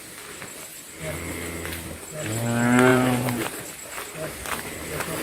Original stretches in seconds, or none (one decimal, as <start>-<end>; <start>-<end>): 0.0-2.9; 3.6-5.2